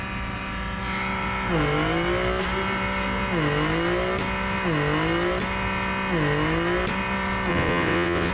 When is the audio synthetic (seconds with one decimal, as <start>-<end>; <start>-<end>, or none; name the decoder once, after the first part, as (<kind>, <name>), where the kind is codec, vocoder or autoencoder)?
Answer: 7.5-8.3 (vocoder, WaveNeXt)